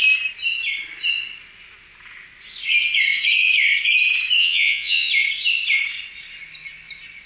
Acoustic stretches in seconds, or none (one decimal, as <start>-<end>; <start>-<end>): 0.0-4.4; 5.1-7.3